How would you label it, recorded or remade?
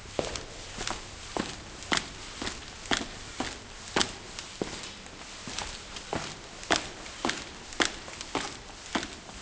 recorded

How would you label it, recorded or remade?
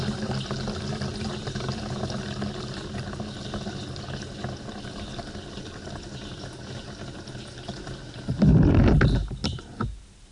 recorded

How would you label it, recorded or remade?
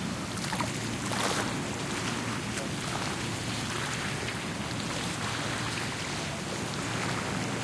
recorded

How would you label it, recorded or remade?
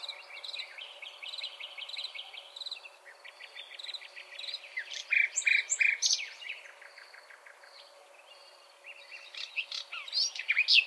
recorded